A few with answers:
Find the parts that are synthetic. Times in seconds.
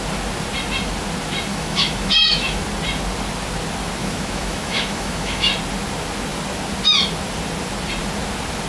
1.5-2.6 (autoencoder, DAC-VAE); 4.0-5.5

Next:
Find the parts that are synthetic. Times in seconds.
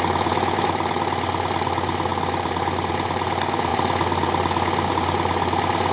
none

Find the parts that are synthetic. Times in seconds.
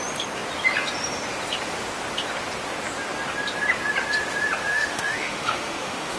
4.7-6.2 (autoencoder, DAC-VAE)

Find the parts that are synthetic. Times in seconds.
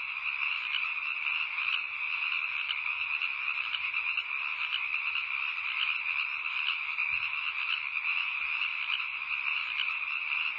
none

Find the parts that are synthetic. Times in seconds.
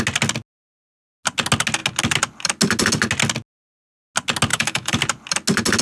4.5-5.0 (autoencoder, DAC-VAE)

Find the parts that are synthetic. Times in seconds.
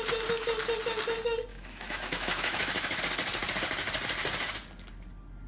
1.5-3.0 (autoencoder, DAC-VAE)